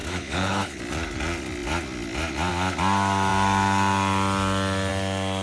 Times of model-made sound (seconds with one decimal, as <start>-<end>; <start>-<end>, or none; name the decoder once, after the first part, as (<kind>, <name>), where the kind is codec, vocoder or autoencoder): 0.0-0.8 (codec, HILCodec)